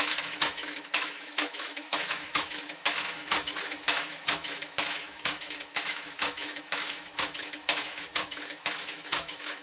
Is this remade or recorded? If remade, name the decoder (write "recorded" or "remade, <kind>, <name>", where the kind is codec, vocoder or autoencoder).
remade, autoencoder, DAC-VAE